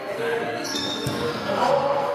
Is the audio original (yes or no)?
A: no